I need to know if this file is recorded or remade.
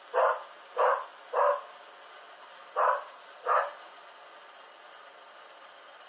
recorded